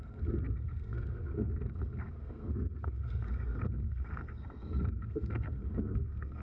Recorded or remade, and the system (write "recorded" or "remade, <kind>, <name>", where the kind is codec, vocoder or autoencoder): remade, codec, SNAC